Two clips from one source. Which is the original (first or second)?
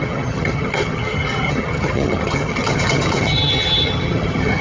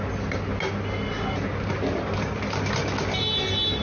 second